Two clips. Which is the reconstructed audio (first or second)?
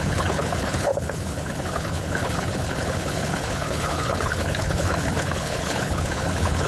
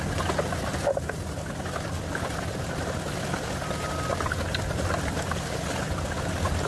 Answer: first